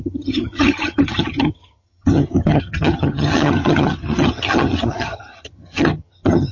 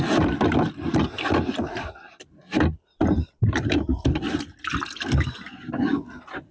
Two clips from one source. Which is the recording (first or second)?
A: second